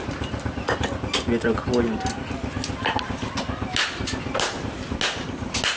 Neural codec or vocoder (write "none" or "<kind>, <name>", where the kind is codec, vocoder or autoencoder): none